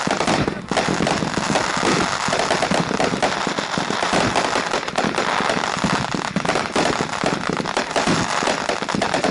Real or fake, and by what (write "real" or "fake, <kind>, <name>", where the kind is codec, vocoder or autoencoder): real